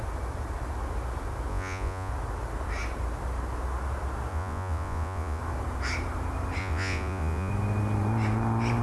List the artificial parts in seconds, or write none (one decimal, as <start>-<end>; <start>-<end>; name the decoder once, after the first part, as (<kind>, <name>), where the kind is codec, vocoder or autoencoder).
1.5-2.1 (vocoder, Vocos); 4.3-5.4; 6.6-7.5